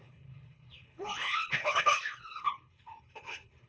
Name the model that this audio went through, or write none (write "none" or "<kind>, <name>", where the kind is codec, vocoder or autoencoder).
codec, HILCodec